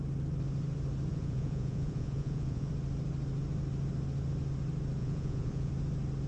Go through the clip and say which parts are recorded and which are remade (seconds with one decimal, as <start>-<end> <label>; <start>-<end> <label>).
0.0-1.1 recorded; 1.1-2.7 remade; 2.7-5.0 recorded; 5.0-5.7 remade; 5.7-6.3 recorded